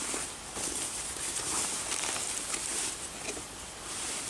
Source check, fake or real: real